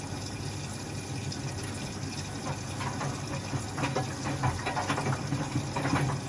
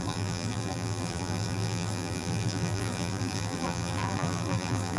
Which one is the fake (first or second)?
second